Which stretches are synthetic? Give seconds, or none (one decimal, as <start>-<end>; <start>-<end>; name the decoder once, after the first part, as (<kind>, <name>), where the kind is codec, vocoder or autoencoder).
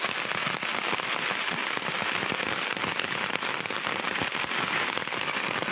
none